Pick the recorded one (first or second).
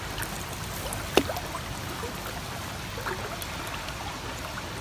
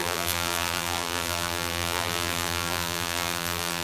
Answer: first